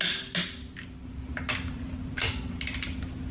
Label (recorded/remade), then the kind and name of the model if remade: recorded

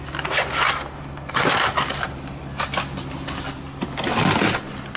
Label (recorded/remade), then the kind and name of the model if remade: recorded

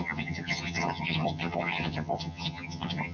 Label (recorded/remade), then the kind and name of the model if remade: remade, vocoder, HiFi-GAN